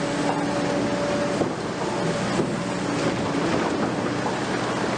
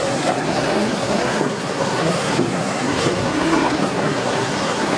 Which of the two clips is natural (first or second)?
first